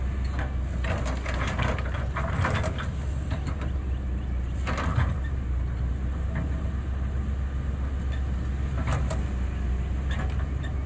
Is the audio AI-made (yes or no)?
no